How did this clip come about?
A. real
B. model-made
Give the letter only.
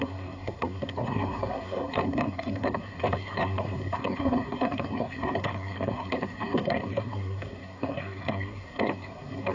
B